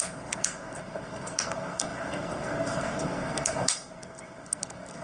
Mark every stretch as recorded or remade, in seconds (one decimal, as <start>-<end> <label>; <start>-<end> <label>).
0.0-5.0 remade